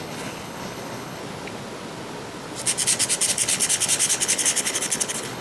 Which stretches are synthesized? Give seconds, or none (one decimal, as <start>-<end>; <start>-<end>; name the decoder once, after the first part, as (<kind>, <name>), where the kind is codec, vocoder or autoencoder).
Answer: 0.0-1.2 (codec, HILCodec); 3.3-5.4